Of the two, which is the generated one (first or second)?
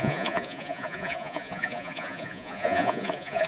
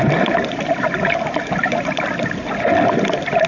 first